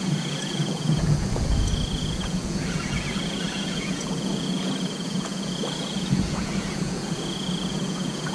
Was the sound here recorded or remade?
remade